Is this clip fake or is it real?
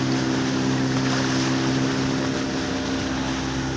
real